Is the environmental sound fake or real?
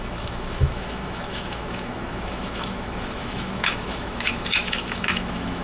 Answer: fake